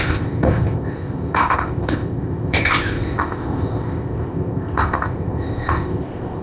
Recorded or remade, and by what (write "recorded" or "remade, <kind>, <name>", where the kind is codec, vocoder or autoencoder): remade, codec, ZipCodec